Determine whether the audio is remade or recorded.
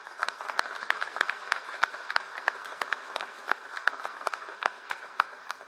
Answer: remade